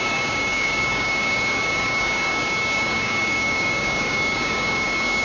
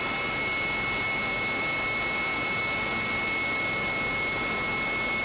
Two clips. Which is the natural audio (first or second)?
second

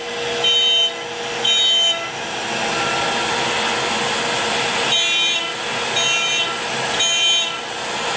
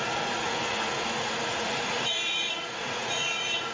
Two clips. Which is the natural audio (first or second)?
first